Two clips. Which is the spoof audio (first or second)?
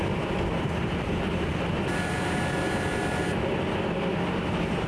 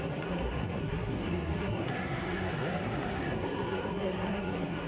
second